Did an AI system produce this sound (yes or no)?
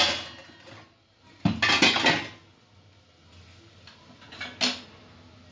no